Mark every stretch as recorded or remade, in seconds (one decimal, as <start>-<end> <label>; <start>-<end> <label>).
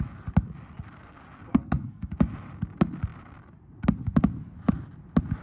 0.0-1.5 recorded; 1.5-2.1 remade; 2.1-5.4 recorded